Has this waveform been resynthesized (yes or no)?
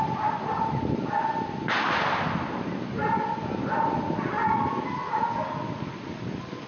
no